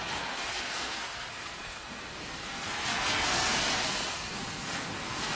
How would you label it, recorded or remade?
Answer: remade